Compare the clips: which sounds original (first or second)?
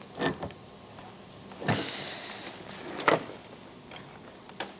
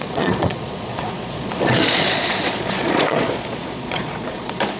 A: first